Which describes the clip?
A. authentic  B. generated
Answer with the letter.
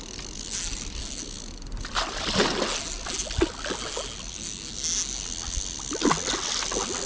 A